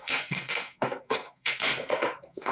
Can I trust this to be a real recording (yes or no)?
no